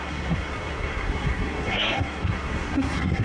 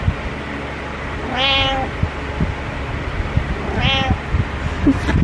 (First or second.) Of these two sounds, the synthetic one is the first